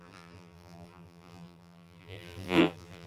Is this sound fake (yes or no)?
yes